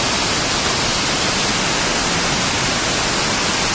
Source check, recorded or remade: recorded